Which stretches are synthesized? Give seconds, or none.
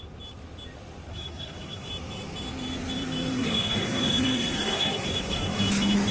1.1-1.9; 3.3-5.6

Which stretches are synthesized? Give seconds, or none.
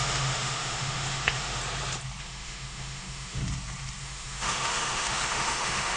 0.0-1.6; 2.2-3.4; 4.0-6.0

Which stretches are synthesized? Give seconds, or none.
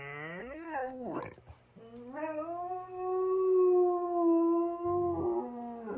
0.4-1.2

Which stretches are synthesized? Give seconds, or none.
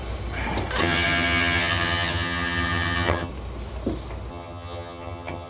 0.8-3.3; 4.3-5.5